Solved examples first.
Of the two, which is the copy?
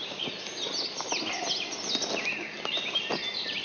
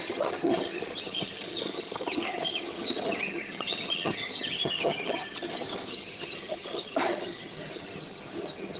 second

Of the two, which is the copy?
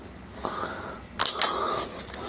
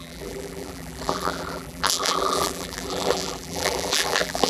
second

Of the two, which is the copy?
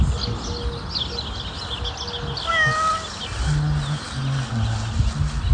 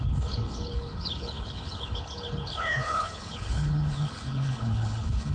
second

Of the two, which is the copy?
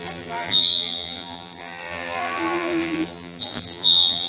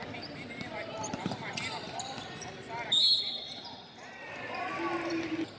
first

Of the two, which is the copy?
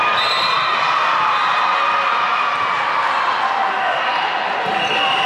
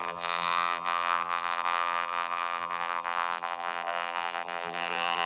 second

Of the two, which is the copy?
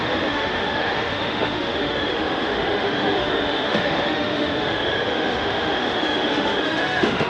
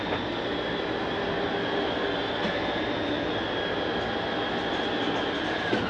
first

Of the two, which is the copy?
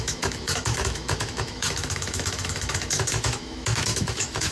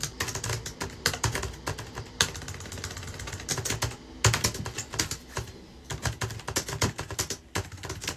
first